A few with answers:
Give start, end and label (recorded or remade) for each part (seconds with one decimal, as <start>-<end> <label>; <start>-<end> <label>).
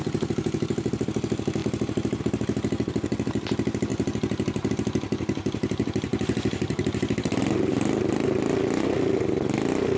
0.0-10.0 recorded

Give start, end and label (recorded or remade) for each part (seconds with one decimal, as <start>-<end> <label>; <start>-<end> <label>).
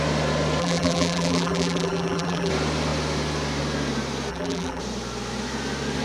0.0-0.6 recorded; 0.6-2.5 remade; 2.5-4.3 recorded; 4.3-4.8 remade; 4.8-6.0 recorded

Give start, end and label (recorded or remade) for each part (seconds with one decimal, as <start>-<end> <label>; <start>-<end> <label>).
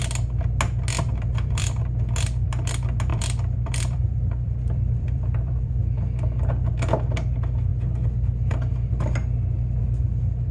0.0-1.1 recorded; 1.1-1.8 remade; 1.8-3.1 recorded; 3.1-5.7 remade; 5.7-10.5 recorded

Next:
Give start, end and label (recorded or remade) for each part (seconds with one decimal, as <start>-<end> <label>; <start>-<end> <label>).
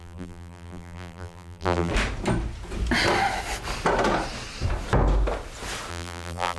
0.0-1.9 remade; 1.9-5.9 recorded; 5.9-6.6 remade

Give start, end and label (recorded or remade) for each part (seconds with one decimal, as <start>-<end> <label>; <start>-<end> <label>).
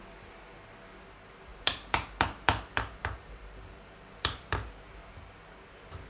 0.0-1.5 recorded; 1.5-4.7 remade; 4.7-6.1 recorded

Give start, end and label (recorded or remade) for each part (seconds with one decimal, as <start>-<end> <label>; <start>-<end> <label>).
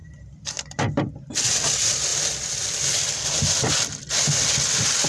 0.0-1.3 remade; 1.3-2.1 recorded; 2.1-3.7 remade; 3.7-5.1 recorded